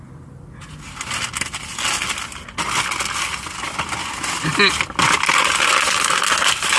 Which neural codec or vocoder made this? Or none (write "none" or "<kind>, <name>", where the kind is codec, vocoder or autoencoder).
none